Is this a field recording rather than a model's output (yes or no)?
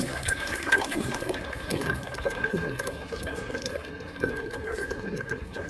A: no